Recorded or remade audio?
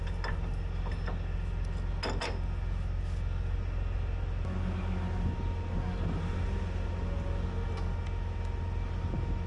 recorded